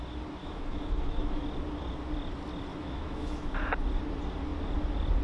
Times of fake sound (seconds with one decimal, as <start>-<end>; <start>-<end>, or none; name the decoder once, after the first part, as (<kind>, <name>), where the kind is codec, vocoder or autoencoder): 0.4-1.4 (autoencoder, DAC-VAE); 2.7-3.5

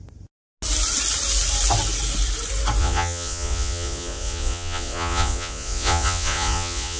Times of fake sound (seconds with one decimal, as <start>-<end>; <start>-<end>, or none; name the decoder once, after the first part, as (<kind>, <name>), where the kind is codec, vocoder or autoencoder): 2.8-7.0 (vocoder, Vocos)

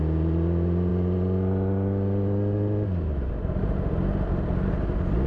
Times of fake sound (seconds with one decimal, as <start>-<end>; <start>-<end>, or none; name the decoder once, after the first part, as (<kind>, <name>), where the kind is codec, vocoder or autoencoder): none